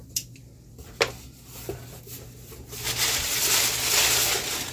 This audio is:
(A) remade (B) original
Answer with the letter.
B